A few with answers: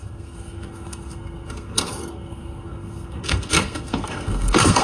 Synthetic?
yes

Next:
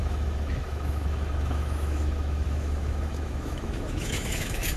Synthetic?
yes